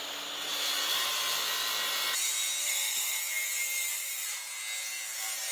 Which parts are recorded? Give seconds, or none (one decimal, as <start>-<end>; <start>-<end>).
0.0-2.6; 3.2-5.5